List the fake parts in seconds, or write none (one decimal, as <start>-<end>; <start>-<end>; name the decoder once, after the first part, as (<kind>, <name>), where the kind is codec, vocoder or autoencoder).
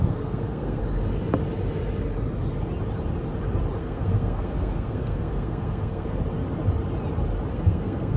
0.0-0.8 (codec, SNAC); 3.8-6.2; 7.5-8.2